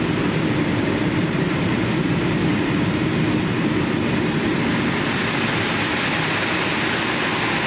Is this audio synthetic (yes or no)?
no